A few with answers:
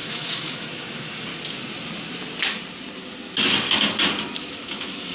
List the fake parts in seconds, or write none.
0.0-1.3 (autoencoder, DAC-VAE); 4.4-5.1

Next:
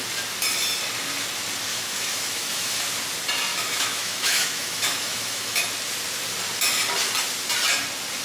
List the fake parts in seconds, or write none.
1.7-2.8 (autoencoder, DAC-VAE); 3.5-5.6

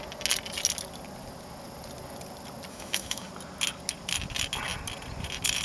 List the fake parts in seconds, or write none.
2.7-3.3 (autoencoder, DAC-VAE)

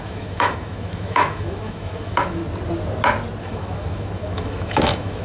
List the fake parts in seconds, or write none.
0.0-2.4 (autoencoder, DAC-VAE); 3.4-5.2